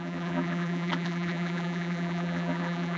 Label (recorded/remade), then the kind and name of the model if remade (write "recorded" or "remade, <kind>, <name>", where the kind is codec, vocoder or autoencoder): remade, vocoder, BigVGAN v2